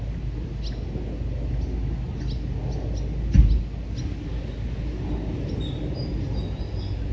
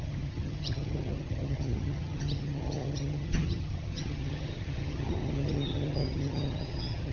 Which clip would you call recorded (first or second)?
first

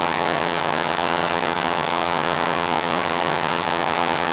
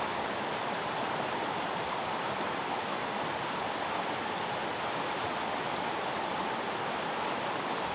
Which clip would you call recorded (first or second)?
second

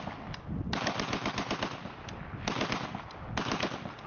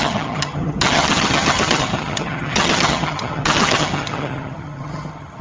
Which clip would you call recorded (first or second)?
first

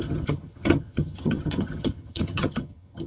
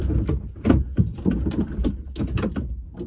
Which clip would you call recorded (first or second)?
second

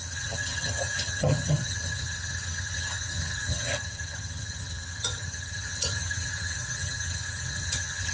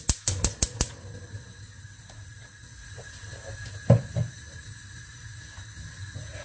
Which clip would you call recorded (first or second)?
second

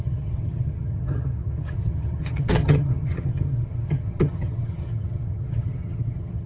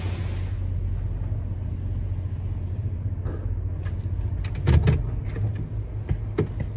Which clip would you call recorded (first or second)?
second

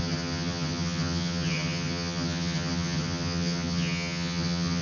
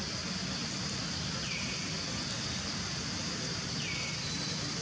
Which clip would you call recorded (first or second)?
second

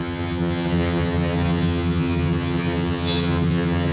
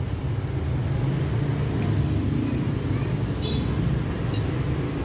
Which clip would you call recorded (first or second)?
second